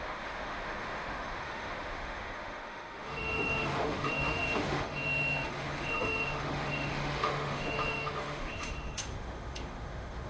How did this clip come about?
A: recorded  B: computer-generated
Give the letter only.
B